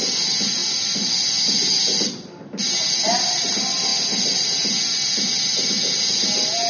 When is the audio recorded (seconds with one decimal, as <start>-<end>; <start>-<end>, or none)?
0.0-6.7